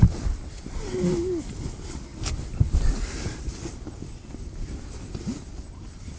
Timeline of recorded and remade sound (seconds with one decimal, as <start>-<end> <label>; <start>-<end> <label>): 0.0-6.2 recorded